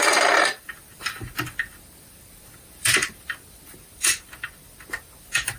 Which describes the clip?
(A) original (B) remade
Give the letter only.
B